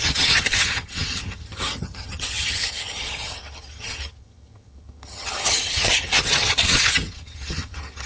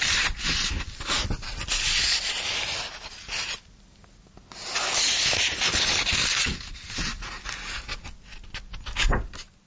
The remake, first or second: first